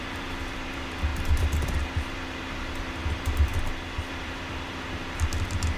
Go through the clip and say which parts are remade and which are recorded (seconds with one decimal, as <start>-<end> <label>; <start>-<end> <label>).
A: 0.0-3.5 remade; 3.5-4.1 recorded; 4.1-5.8 remade